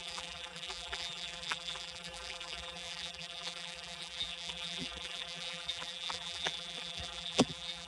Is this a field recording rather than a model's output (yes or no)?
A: no